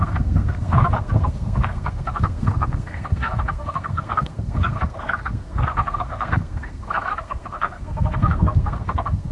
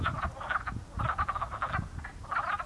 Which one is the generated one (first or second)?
first